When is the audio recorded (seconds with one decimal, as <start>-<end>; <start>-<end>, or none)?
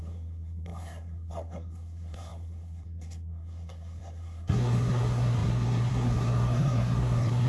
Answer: none